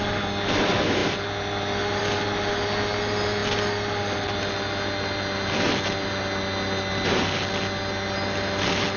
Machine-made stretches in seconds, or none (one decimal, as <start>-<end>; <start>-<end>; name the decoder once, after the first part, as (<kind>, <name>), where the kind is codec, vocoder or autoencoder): none